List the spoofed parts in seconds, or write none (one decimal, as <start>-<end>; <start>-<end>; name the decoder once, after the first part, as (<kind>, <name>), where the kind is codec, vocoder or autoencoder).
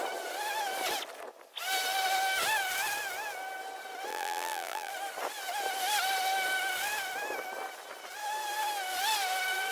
4.1-4.9 (vocoder, BigVGAN v2)